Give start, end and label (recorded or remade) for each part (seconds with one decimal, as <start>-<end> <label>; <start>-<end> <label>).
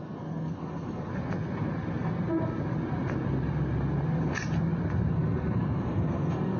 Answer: 0.0-1.1 remade; 1.1-5.1 recorded; 5.1-6.6 remade